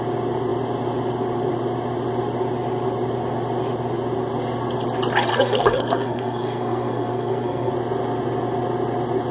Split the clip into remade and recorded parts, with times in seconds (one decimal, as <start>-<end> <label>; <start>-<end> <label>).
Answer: 0.0-5.3 recorded; 5.3-7.7 remade; 7.7-9.3 recorded